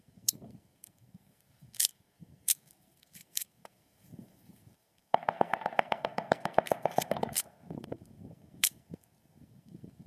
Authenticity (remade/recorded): remade